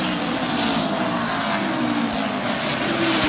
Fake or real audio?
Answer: real